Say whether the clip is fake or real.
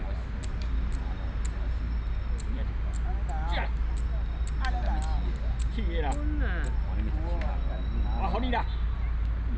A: real